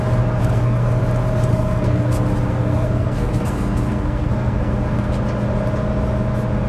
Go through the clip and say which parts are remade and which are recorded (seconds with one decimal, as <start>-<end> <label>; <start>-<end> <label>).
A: 0.0-0.4 recorded; 0.4-1.0 remade; 1.0-1.5 recorded; 1.5-2.1 remade; 2.1-2.5 recorded; 2.5-5.1 remade; 5.1-6.7 recorded